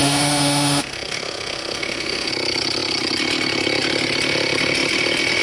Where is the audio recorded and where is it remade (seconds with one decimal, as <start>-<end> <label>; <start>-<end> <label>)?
0.0-2.3 remade; 2.3-5.4 recorded